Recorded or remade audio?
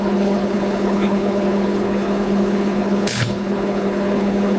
remade